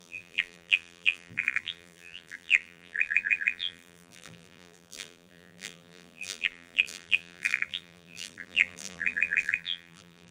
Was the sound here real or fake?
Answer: fake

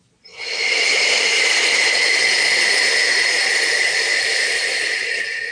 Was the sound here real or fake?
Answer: real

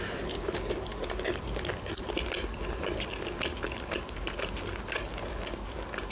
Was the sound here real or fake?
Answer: real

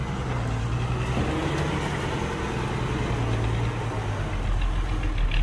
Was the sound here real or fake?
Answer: real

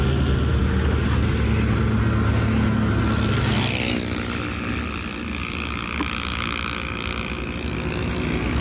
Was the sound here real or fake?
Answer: real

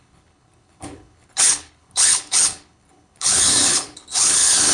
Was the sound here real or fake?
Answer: fake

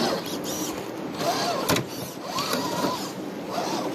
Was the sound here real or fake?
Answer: real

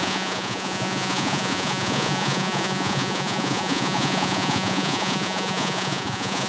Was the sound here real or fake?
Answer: fake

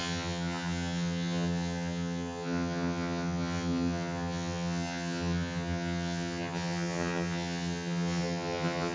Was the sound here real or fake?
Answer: fake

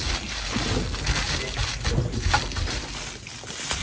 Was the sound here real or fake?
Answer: real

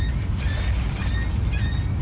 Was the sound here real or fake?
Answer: real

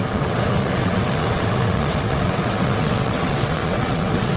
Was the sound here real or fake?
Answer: fake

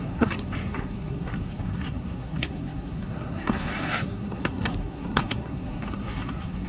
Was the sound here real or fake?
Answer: fake